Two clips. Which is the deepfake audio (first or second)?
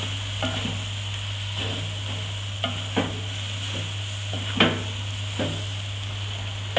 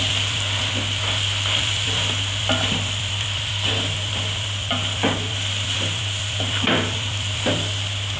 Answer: second